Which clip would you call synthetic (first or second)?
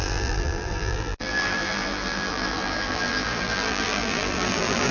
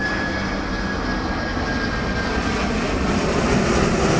first